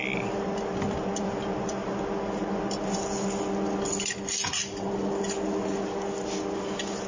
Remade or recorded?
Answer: recorded